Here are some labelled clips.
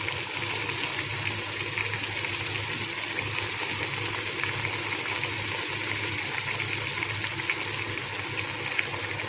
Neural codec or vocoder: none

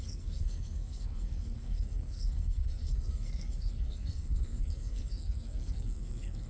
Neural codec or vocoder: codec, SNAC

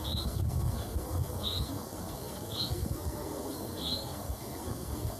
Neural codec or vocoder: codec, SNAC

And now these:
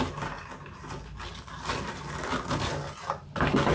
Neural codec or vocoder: none